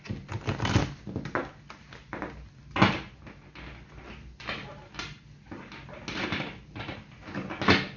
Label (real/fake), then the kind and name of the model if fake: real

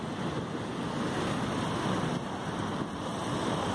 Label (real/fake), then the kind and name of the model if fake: real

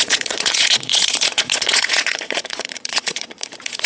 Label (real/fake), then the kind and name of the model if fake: fake, vocoder, Vocos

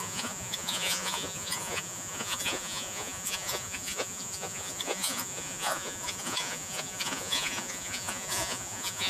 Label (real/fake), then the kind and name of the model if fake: fake, vocoder, Vocos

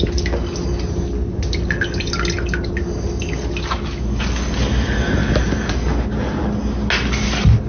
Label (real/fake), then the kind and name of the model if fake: real